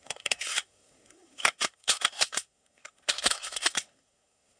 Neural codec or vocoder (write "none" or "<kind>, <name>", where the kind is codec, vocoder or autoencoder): codec, SNAC